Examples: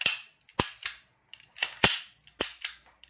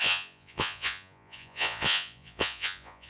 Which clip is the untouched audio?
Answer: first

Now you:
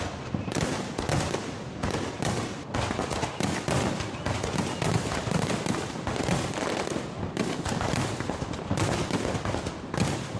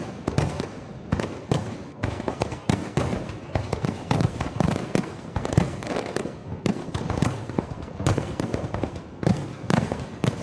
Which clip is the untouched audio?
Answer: first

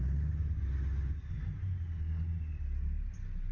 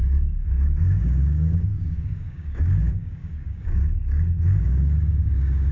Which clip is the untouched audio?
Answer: first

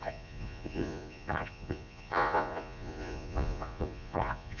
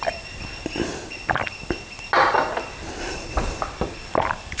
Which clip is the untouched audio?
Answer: second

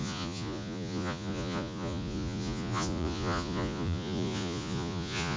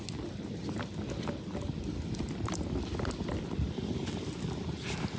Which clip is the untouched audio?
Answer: second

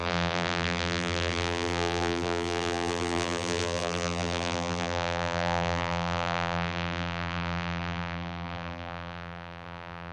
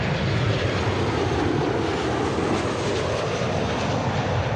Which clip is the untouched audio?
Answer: second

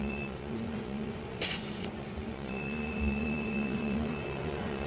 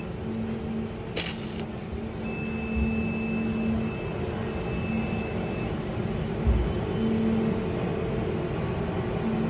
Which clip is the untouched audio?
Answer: second